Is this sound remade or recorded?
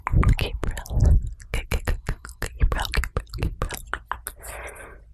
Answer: recorded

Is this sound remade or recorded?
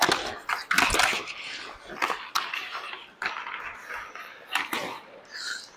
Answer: recorded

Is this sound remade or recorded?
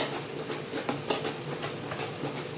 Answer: recorded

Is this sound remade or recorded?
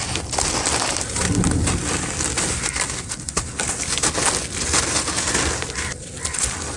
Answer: recorded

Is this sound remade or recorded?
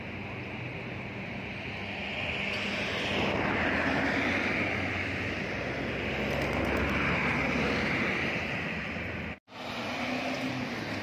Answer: recorded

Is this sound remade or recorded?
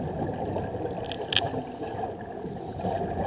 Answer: recorded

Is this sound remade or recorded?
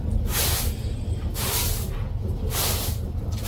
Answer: recorded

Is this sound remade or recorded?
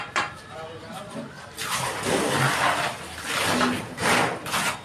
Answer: recorded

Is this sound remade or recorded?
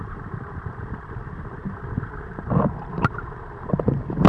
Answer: remade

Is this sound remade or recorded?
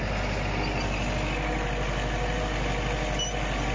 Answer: recorded